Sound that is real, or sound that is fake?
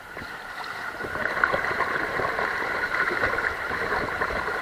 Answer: fake